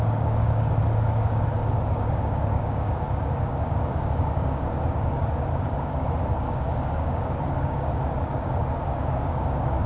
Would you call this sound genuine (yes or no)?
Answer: no